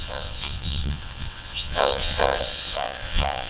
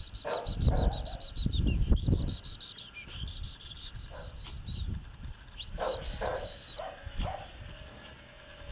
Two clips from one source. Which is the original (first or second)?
second